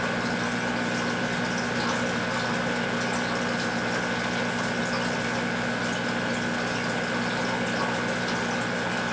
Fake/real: real